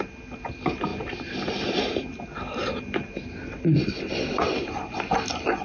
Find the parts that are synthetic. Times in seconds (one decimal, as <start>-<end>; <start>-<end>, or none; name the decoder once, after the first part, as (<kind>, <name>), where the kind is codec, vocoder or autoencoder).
none